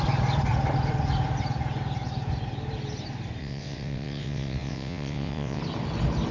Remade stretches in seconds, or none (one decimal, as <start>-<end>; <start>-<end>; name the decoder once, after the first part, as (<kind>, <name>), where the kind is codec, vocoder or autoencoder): 3.4-5.6 (vocoder, WaveNeXt)